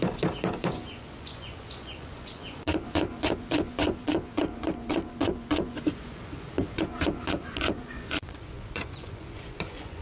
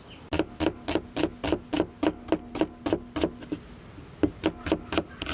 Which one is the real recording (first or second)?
second